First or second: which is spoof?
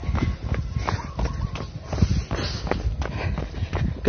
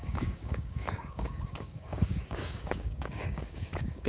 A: second